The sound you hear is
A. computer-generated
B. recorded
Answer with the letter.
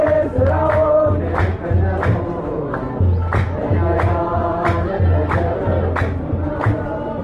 B